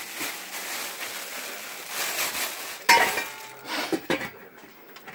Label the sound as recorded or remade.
recorded